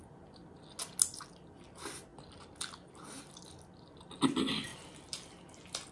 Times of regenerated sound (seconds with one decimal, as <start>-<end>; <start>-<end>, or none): none